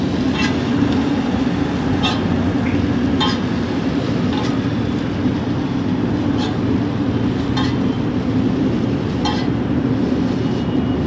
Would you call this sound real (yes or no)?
yes